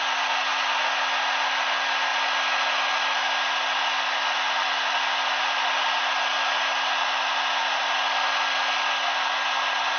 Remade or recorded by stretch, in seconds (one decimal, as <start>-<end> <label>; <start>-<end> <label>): 0.0-10.0 recorded